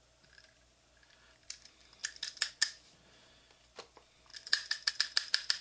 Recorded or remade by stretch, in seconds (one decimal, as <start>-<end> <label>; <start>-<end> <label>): 0.0-5.6 recorded

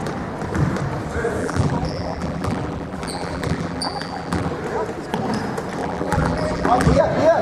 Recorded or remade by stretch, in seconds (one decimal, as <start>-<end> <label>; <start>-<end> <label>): 0.0-1.4 recorded; 1.4-4.5 remade; 4.5-5.8 recorded; 5.8-7.0 remade; 7.0-7.4 recorded

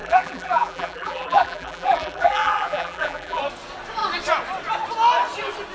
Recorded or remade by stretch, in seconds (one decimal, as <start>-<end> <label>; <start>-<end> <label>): 0.0-3.4 remade; 3.4-5.7 recorded

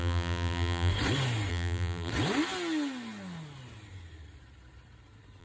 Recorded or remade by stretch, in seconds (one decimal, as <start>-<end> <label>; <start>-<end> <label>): 0.0-0.9 remade; 0.9-1.5 recorded; 1.5-2.1 remade; 2.1-5.4 recorded

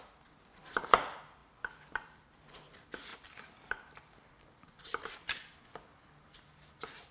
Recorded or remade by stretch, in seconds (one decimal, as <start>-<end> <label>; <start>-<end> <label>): 0.0-1.4 recorded; 1.4-2.6 remade; 2.6-3.1 recorded; 3.1-5.5 remade; 5.5-7.1 recorded

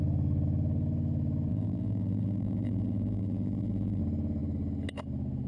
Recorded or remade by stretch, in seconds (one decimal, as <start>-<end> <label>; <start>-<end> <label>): 0.0-1.5 recorded; 1.5-4.0 remade; 4.0-5.5 recorded

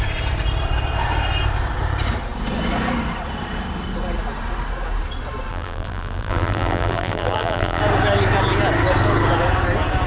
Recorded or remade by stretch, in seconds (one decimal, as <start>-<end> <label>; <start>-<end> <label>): 0.0-5.5 recorded; 5.5-7.8 remade; 7.8-10.1 recorded

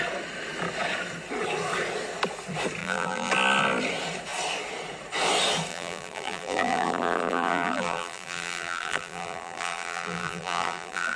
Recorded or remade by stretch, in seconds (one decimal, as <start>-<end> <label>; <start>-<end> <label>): 0.0-2.8 recorded; 2.8-3.3 remade; 3.3-5.7 recorded; 5.7-11.2 remade